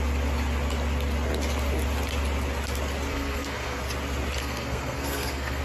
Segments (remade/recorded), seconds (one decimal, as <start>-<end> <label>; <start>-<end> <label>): 0.0-3.1 recorded; 3.1-3.8 remade; 3.8-4.4 recorded; 4.4-5.6 remade